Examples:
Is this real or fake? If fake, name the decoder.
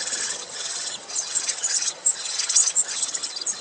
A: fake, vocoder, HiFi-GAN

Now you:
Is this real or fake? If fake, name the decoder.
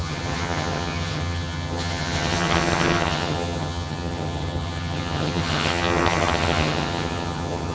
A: fake, vocoder, HiFi-GAN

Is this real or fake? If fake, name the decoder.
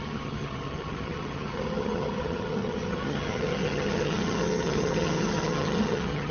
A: fake, vocoder, HiFi-GAN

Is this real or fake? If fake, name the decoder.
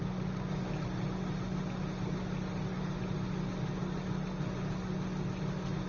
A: real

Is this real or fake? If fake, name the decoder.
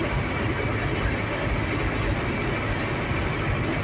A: real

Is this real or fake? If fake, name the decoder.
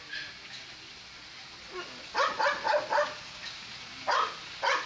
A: real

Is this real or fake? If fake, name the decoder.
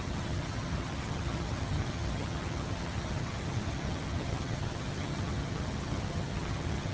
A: fake, vocoder, HiFi-GAN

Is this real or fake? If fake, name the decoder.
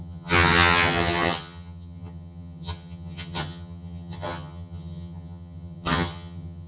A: fake, vocoder, HiFi-GAN